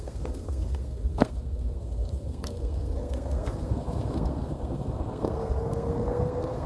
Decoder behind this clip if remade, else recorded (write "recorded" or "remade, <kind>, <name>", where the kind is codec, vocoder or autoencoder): remade, codec, SNAC